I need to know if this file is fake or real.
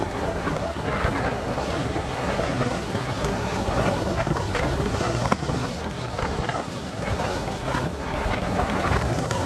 fake